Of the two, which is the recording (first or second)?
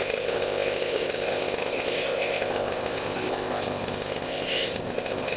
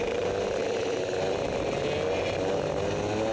second